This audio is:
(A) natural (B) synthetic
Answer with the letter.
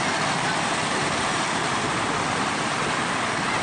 B